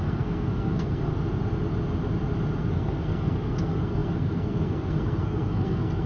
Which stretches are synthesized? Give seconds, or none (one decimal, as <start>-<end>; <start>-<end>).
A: 0.0-1.1; 2.6-6.1